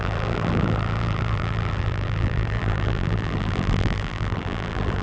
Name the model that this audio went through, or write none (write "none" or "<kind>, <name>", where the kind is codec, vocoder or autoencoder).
vocoder, BigVGAN v2